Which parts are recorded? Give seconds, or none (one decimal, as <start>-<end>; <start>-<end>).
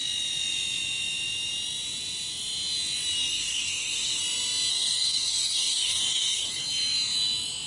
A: 0.0-3.3; 4.2-4.7; 6.6-7.7